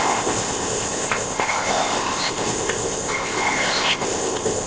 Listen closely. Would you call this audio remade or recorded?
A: remade